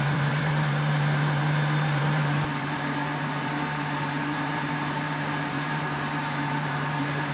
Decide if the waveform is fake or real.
fake